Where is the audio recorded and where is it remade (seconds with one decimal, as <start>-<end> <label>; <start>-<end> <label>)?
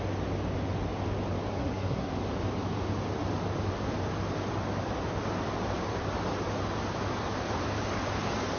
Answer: 0.0-1.5 recorded; 1.5-2.1 remade; 2.1-8.6 recorded